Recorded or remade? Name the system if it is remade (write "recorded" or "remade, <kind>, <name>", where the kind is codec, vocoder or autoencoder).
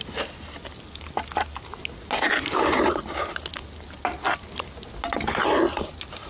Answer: recorded